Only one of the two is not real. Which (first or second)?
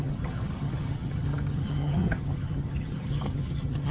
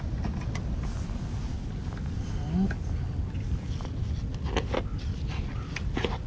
first